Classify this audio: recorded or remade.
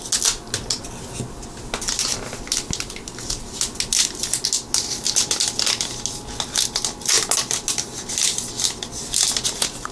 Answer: recorded